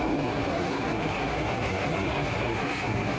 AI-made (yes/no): yes